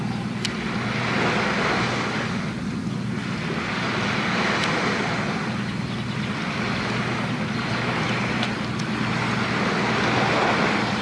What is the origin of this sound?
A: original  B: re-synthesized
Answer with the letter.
A